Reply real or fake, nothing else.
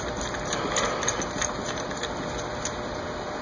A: real